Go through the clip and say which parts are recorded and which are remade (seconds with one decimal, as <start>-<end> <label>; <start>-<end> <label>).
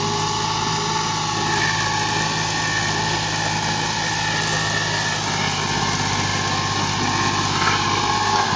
0.0-8.6 recorded